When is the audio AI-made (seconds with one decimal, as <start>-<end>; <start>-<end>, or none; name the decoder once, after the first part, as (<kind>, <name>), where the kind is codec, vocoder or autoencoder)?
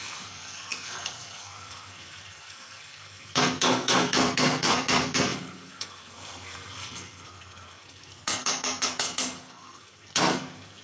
0.0-10.8 (codec, SNAC)